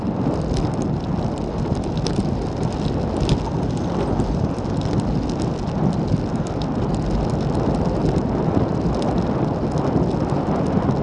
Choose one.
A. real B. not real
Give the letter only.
A